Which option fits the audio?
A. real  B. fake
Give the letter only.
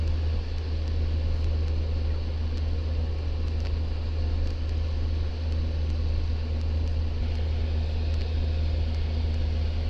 A